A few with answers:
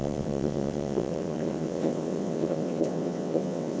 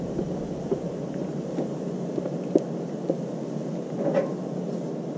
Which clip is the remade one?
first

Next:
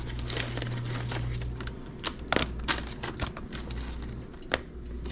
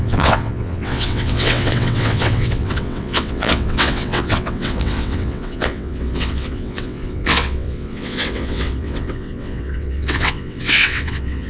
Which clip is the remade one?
second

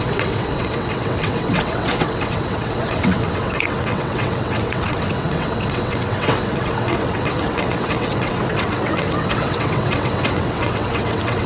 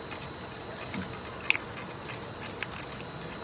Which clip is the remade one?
first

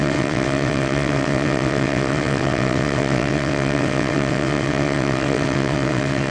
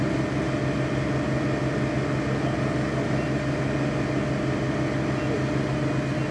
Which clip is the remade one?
first